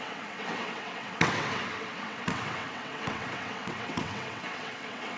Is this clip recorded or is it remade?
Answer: remade